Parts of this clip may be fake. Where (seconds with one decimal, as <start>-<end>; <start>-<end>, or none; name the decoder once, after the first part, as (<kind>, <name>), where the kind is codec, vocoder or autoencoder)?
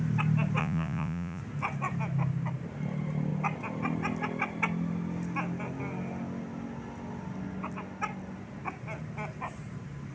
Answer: 0.6-1.4 (vocoder, Vocos)